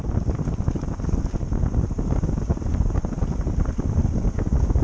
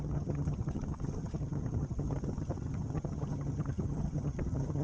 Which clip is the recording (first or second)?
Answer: first